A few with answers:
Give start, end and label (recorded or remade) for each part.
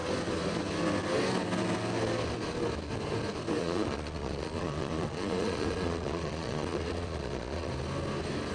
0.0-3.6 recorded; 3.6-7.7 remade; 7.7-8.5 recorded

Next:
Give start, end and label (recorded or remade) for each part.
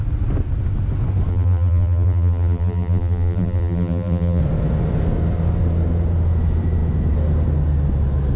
0.0-1.3 recorded; 1.3-4.4 remade; 4.4-8.4 recorded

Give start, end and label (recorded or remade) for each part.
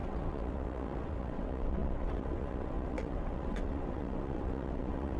0.0-5.2 remade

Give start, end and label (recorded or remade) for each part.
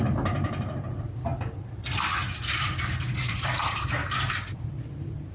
0.0-1.3 remade; 1.3-2.6 recorded; 2.6-4.0 remade; 4.0-4.7 recorded; 4.7-5.3 remade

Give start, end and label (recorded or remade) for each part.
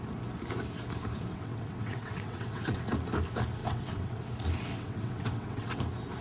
0.0-1.3 recorded; 1.3-2.8 remade; 2.8-3.6 recorded; 3.6-4.2 remade; 4.2-4.7 recorded; 4.7-5.8 remade; 5.8-6.2 recorded